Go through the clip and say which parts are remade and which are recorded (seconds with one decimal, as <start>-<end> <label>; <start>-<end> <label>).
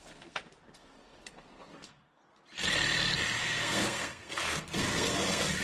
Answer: 0.0-2.2 remade; 2.2-3.4 recorded; 3.4-5.6 remade